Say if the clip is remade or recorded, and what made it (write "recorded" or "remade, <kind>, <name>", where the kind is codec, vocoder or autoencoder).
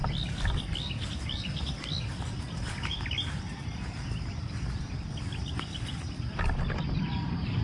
recorded